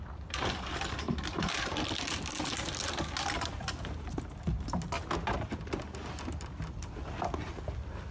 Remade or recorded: recorded